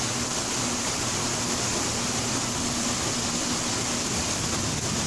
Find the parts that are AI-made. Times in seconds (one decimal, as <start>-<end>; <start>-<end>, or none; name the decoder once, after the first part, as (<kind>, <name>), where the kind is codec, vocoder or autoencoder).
none